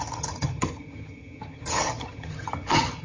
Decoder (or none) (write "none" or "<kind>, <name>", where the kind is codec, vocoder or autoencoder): vocoder, HiFi-GAN